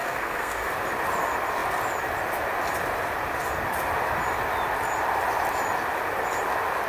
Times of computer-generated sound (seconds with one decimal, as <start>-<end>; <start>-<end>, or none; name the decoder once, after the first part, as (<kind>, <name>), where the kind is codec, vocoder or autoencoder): 0.0-0.7 (codec, SNAC)